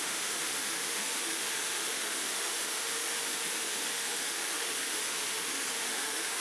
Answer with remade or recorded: remade